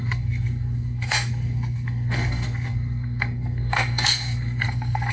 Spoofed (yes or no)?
yes